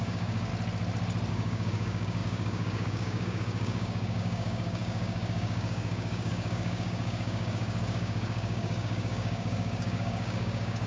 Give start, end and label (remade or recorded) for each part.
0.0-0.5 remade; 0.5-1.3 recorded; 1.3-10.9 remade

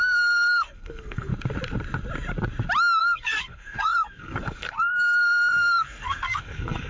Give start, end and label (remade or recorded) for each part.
0.0-1.3 remade; 1.3-3.0 recorded; 3.0-6.9 remade

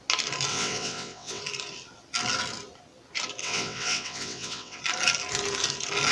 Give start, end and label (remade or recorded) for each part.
0.0-0.5 recorded; 0.5-1.4 remade; 1.4-3.4 recorded; 3.4-4.8 remade; 4.8-6.1 recorded

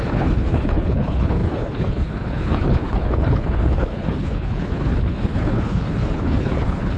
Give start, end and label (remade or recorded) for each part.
0.0-7.0 remade